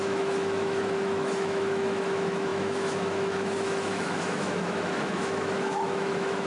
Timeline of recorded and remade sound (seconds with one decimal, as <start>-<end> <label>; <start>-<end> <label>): 0.0-6.5 remade